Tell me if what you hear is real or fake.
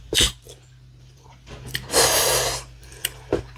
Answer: real